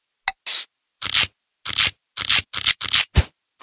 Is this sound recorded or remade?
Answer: recorded